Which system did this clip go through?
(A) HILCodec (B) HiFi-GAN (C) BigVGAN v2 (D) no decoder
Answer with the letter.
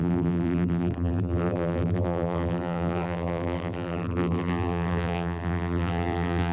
C